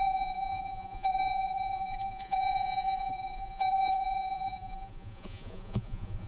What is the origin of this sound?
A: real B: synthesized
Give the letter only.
B